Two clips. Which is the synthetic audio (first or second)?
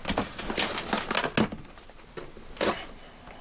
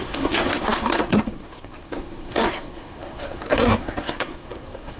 second